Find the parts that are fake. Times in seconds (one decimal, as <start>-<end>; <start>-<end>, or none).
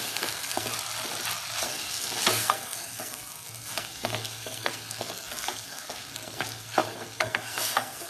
0.0-0.7; 1.6-8.1